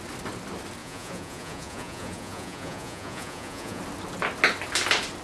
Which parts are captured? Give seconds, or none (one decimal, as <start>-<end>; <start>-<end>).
0.0-0.8; 3.8-5.2